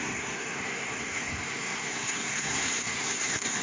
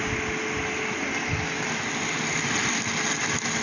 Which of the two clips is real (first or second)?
second